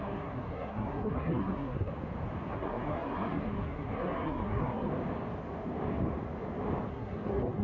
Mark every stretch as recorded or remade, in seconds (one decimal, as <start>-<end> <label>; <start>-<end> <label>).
0.0-1.9 remade; 1.9-2.5 recorded; 2.5-4.9 remade; 4.9-6.9 recorded; 6.9-7.6 remade